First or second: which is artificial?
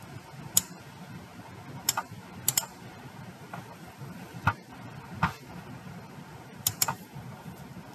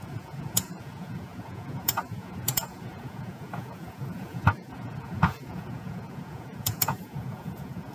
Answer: second